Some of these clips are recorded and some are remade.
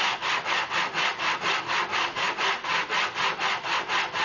recorded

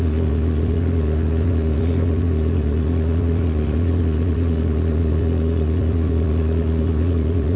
remade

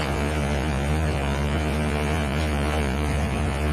remade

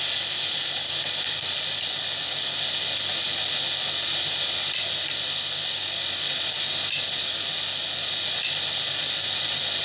recorded